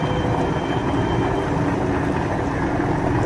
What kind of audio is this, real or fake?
fake